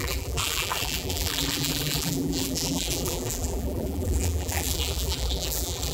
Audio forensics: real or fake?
fake